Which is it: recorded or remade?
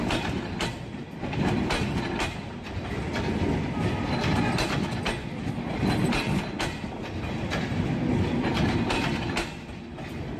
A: recorded